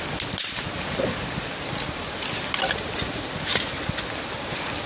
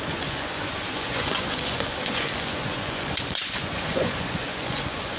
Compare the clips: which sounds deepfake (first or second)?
second